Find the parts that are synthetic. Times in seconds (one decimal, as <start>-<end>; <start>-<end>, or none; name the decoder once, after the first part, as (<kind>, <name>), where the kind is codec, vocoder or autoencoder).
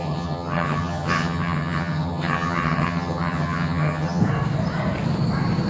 0.0-4.2 (vocoder, HiFi-GAN)